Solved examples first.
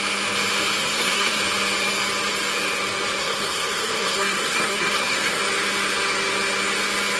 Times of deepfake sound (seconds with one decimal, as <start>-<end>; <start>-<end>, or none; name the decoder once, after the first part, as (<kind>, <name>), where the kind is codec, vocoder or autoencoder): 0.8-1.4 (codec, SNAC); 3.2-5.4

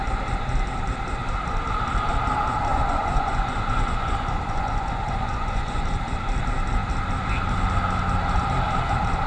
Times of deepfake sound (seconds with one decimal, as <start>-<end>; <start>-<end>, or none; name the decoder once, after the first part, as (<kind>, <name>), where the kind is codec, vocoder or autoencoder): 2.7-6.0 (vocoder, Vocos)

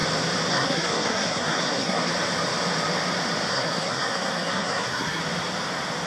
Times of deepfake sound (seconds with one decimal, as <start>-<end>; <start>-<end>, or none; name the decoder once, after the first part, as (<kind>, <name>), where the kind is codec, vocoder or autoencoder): 0.5-2.1 (codec, SNAC); 3.5-5.2